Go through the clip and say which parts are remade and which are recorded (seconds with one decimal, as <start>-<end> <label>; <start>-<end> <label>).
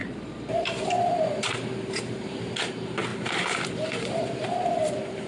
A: 0.0-5.3 remade